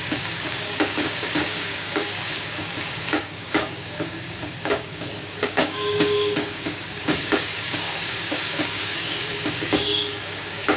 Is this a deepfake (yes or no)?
yes